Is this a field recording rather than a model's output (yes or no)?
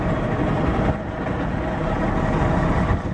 yes